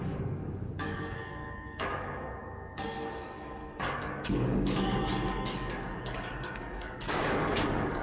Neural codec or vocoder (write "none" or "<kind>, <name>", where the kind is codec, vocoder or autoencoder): codec, DAC